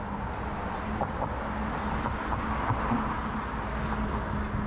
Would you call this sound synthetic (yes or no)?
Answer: no